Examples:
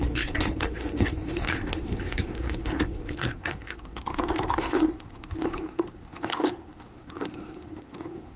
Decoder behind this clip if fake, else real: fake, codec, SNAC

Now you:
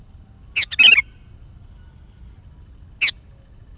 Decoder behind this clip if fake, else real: real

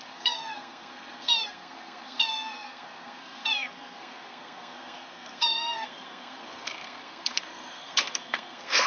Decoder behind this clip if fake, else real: fake, codec, SNAC